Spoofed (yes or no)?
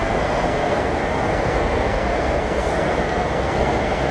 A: yes